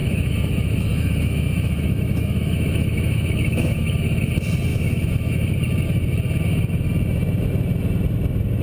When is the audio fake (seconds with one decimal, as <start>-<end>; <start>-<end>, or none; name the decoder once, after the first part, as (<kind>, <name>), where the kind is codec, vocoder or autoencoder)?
0.0-4.3 (autoencoder, DAC-VAE); 4.7-5.5